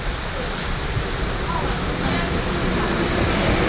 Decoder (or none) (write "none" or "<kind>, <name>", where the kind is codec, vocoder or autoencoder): none